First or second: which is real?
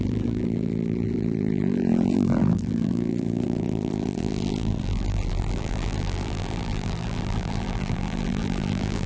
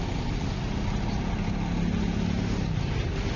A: second